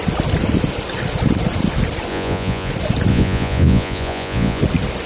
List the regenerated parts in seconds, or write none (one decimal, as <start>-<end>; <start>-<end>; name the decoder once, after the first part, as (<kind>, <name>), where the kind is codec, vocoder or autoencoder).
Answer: 2.1-2.7 (vocoder, Vocos); 3.1-4.6